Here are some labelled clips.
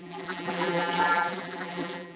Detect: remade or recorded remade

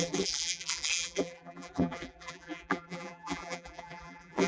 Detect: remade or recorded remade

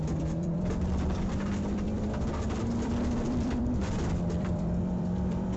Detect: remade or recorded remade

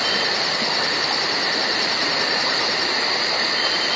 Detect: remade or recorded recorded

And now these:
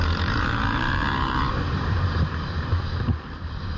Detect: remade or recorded remade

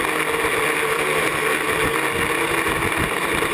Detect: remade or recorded recorded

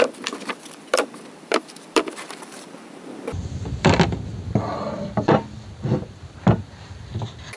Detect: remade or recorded remade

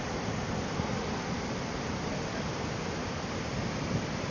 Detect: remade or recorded remade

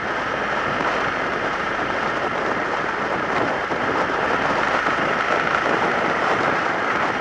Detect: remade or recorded remade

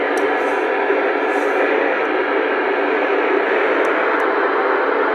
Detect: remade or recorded recorded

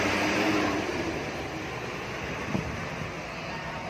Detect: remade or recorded recorded